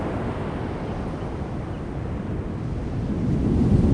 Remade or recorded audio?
recorded